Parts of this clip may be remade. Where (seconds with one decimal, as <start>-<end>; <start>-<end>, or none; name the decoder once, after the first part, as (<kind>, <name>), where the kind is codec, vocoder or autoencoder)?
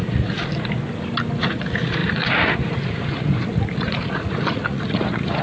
0.0-0.5 (vocoder, Vocos); 1.4-5.4